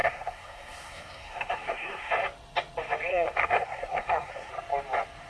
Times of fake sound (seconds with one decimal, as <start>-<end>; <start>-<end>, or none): 0.0-2.1; 3.1-4.5